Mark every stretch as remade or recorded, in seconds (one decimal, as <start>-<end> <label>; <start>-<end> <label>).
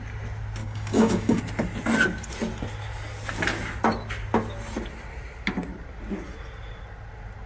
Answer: 0.0-0.6 recorded; 0.6-1.4 remade; 1.4-7.5 recorded